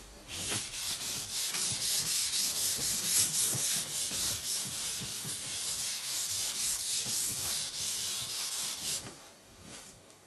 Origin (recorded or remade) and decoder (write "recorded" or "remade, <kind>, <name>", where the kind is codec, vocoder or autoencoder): remade, codec, DAC